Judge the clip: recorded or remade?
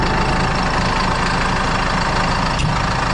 recorded